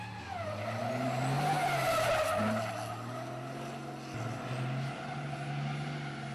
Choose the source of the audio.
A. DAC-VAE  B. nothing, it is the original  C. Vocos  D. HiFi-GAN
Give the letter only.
B